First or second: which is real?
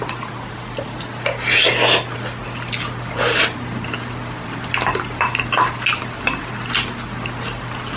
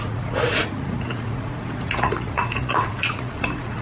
first